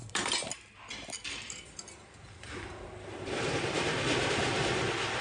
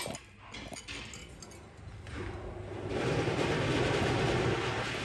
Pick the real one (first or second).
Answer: second